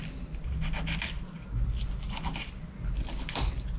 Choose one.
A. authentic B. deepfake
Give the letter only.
A